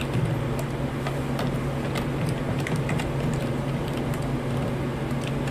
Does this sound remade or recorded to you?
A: recorded